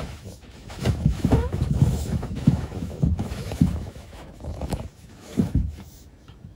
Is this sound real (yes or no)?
no